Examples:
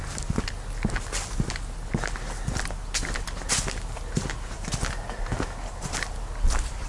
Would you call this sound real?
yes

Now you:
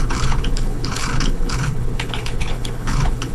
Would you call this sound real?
no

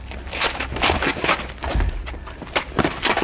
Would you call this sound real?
yes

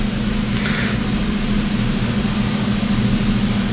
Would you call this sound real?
yes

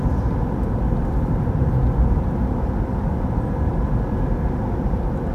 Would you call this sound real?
yes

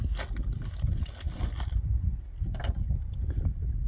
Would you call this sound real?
yes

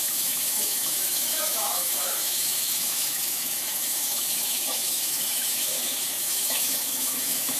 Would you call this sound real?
no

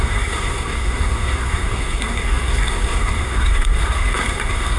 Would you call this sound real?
no